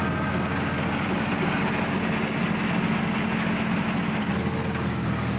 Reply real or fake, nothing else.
real